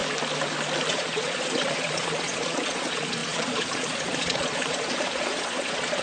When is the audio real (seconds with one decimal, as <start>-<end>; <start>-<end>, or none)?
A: 0.0-0.9